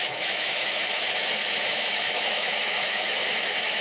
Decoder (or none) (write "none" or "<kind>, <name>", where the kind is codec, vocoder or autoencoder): autoencoder, DAC-VAE